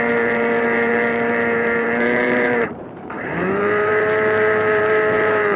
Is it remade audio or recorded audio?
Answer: remade